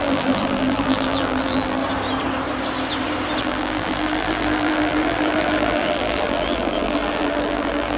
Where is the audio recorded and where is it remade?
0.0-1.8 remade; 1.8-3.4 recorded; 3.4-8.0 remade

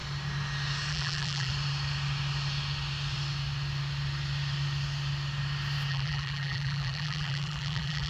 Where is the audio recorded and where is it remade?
0.0-0.9 recorded; 0.9-1.5 remade; 1.5-5.9 recorded; 5.9-8.1 remade